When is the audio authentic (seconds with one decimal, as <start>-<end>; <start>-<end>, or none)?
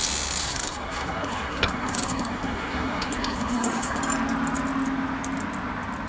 0.0-0.4; 4.0-6.1